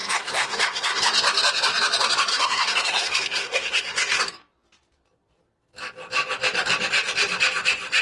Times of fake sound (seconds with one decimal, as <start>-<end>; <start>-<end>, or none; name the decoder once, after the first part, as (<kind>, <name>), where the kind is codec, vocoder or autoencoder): 0.0-1.0 (codec, SNAC); 2.3-4.2